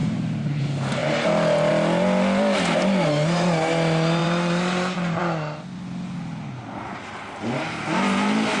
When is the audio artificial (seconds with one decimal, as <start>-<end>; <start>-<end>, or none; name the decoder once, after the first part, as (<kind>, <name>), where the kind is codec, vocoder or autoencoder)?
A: 0.0-0.6 (vocoder, BigVGAN v2); 4.2-5.2